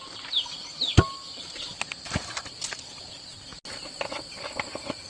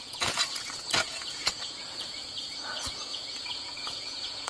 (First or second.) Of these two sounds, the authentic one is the first